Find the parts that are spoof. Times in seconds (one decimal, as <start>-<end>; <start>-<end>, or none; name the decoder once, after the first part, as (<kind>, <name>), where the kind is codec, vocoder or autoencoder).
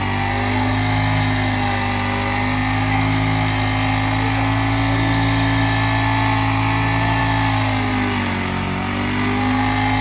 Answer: none